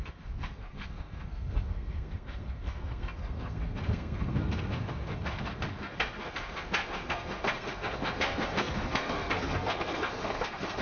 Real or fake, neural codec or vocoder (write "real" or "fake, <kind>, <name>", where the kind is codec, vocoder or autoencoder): fake, codec, SNAC